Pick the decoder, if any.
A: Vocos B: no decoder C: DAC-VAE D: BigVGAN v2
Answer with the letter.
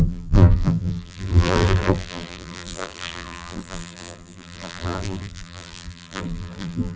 D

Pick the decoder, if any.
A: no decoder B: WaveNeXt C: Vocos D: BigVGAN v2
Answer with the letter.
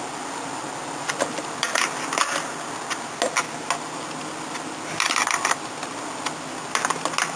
A